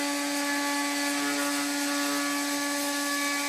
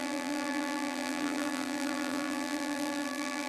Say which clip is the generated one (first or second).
second